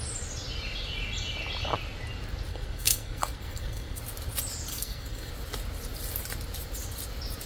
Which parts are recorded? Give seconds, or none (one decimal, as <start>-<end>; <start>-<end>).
0.0-2.5; 4.0-4.7; 5.3-7.5